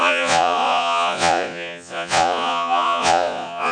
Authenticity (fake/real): fake